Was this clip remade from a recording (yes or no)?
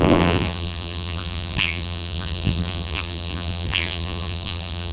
yes